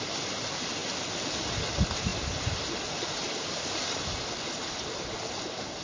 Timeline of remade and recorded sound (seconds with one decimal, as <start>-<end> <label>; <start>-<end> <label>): 0.0-5.8 recorded